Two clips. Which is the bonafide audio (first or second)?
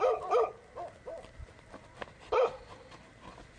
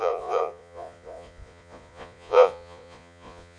first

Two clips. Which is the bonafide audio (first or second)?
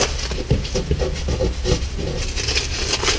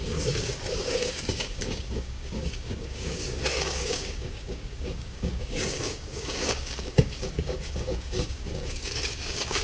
first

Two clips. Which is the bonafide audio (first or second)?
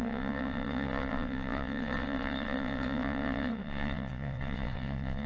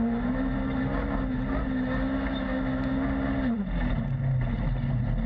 second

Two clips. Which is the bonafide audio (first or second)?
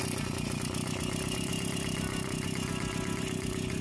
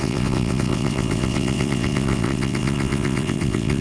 first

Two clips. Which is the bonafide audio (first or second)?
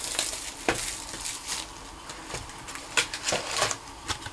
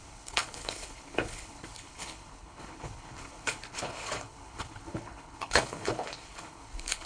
first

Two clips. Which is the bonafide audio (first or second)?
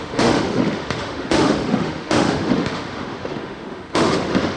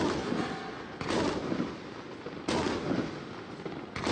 second